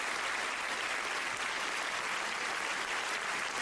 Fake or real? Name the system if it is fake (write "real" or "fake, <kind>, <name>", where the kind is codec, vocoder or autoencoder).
real